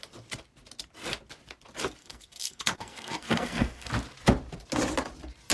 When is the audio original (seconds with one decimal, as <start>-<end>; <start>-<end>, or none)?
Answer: 0.0-2.0; 3.9-5.5